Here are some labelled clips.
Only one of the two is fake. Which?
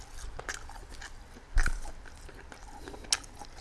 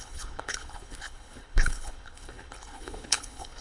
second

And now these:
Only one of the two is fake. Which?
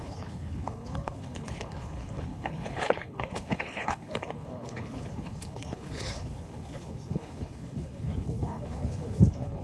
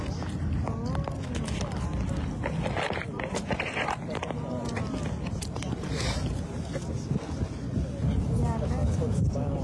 first